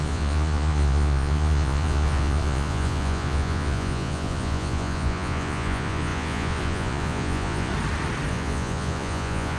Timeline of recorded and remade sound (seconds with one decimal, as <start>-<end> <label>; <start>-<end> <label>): 0.0-7.7 remade; 7.7-8.3 recorded; 8.3-9.6 remade